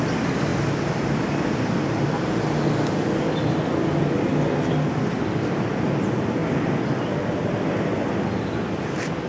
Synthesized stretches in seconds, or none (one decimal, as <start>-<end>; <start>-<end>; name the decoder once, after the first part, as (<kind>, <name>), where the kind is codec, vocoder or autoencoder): none